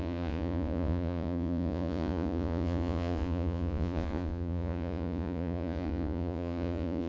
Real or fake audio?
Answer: fake